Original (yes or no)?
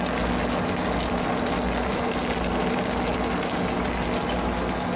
yes